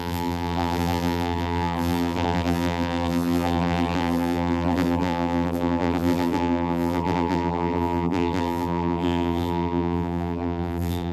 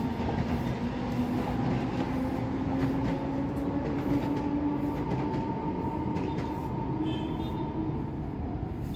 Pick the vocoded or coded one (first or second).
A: first